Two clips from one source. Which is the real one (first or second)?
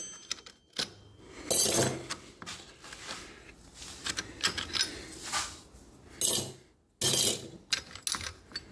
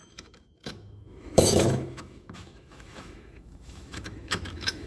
first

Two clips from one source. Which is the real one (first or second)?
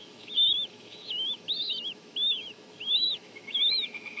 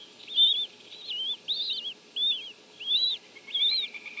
second